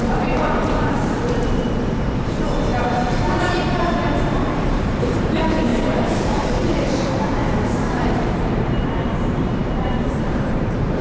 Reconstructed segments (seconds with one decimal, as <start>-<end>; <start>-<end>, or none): 0.0-11.0